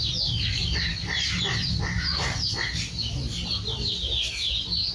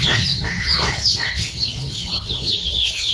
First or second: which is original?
first